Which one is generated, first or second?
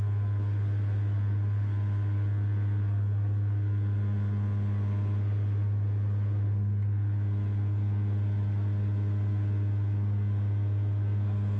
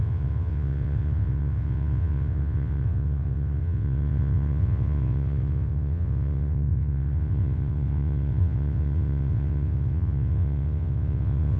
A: second